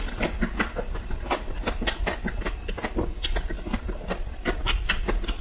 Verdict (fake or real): fake